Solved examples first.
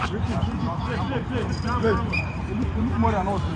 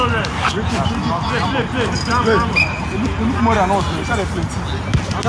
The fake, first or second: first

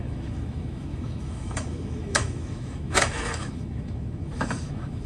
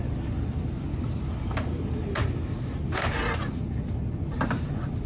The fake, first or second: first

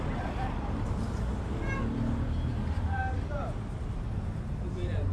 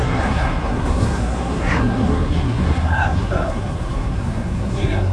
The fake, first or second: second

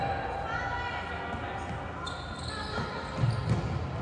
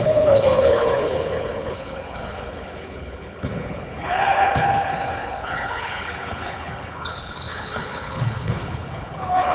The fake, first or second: second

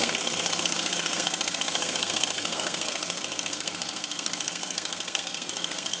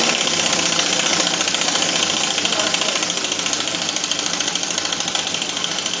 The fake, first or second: first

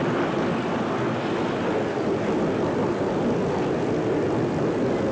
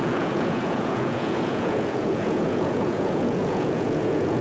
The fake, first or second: second